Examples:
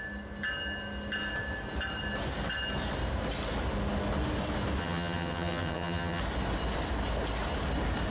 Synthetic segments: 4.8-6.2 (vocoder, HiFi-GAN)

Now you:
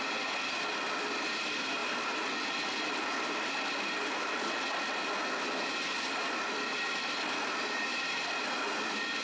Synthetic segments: none

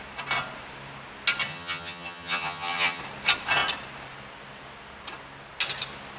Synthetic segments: 1.5-3.0 (vocoder, HiFi-GAN)

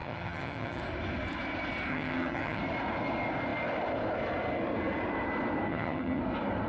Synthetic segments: 0.0-0.8 (vocoder, HiFi-GAN); 1.9-2.6; 5.7-6.2

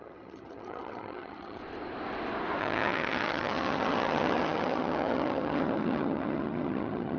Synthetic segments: 0.0-1.6 (vocoder, HiFi-GAN); 2.6-7.2

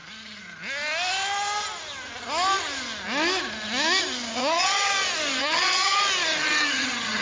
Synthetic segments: 4.4-4.9 (vocoder, HiFi-GAN); 5.4-6.0; 6.4-7.2

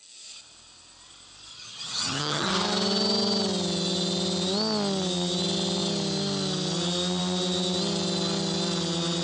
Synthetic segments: 1.5-2.5 (vocoder, HiFi-GAN)